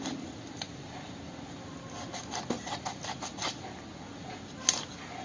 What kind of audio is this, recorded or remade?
recorded